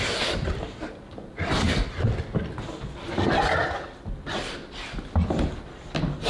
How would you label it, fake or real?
real